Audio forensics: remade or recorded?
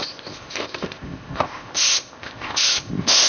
remade